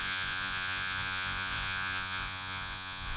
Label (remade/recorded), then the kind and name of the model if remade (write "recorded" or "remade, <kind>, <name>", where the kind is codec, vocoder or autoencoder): remade, vocoder, Vocos